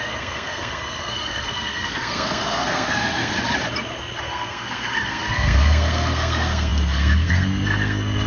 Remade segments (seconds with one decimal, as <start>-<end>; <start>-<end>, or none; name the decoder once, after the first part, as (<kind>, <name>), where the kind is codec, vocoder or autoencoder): 0.0-3.3 (codec, SNAC); 4.2-8.3